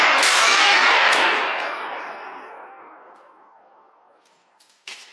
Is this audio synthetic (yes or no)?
yes